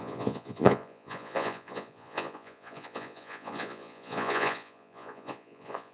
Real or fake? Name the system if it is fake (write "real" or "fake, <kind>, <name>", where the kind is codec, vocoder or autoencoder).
fake, vocoder, Vocos